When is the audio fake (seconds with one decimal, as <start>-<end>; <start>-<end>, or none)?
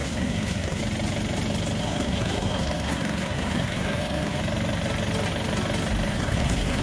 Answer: 0.0-0.8; 1.8-4.4; 6.1-6.8